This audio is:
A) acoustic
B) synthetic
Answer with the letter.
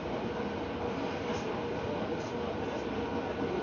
A